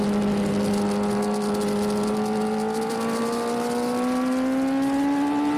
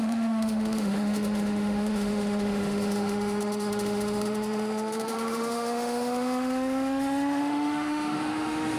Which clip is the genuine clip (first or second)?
first